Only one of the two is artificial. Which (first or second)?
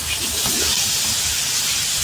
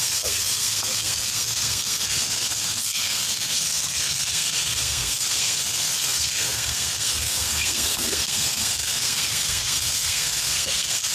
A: second